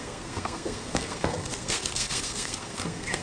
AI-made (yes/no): yes